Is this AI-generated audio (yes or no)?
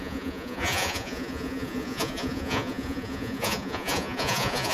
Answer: yes